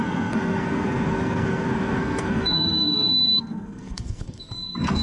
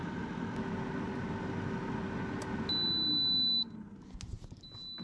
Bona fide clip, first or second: second